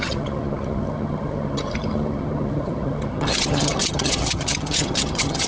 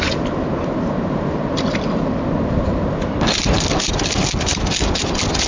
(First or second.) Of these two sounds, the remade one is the first